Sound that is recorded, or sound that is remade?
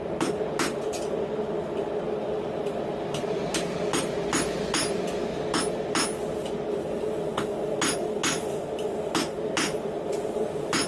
recorded